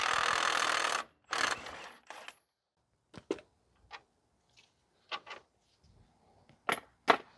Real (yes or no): yes